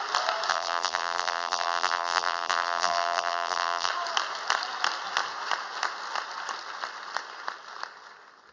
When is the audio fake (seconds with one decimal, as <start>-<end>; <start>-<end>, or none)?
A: 0.5-3.9